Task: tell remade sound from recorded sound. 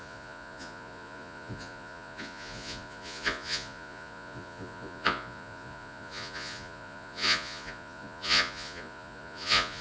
remade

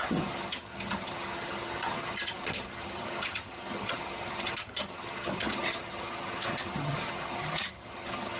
remade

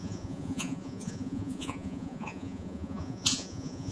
remade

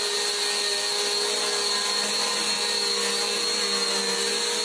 recorded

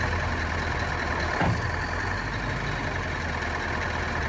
recorded